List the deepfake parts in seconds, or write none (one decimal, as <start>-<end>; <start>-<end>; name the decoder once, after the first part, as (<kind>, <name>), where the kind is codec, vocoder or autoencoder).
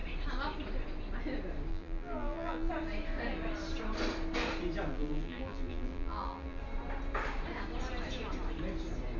1.7-2.7 (vocoder, BigVGAN v2); 4.9-6.6